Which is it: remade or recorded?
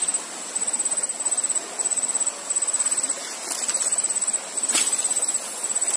recorded